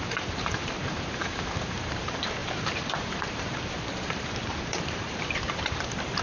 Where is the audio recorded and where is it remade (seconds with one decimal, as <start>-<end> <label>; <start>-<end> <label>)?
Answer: 0.0-6.2 remade